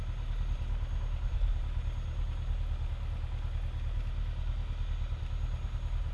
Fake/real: real